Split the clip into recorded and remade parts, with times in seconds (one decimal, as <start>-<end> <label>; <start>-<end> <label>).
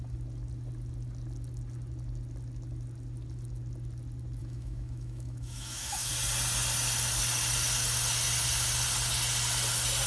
0.0-4.4 recorded; 4.4-6.1 remade; 6.1-10.1 recorded